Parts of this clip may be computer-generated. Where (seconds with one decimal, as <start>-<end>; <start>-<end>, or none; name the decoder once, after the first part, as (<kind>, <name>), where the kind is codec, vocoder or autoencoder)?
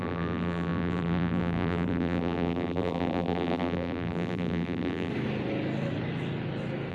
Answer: 0.0-5.1 (vocoder, BigVGAN v2)